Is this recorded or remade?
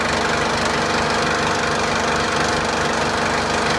recorded